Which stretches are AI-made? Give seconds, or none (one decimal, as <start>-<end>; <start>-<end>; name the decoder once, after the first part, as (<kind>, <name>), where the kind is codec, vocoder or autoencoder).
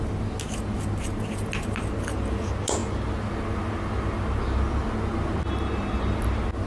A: none